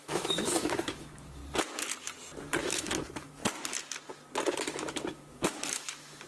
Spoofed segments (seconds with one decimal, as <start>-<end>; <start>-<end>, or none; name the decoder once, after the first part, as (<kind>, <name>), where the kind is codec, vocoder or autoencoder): 0.0-1.4 (autoencoder, DAC-VAE); 2.6-3.4; 4.6-6.3